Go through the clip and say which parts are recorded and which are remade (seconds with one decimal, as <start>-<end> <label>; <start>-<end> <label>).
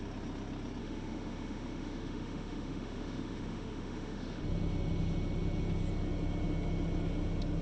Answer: 0.0-0.8 recorded; 0.8-4.4 remade; 4.4-7.6 recorded